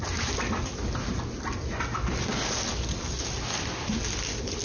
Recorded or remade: recorded